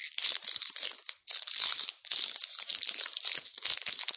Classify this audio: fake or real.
real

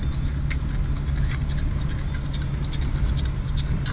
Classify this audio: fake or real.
real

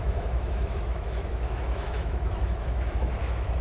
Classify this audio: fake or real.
fake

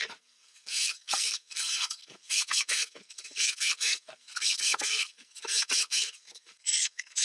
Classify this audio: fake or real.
fake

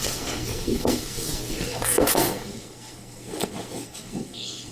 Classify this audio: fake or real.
fake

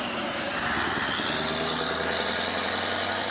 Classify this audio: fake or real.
real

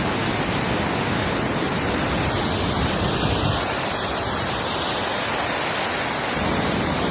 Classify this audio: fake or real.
real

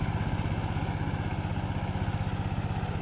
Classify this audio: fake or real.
real